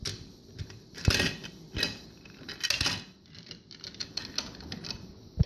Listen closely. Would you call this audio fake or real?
real